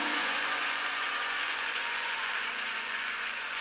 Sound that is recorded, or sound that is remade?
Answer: remade